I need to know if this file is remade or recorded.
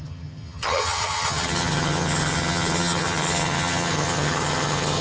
remade